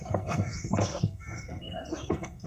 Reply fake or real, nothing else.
fake